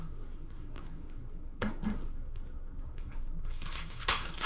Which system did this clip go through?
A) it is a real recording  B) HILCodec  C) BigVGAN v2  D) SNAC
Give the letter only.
D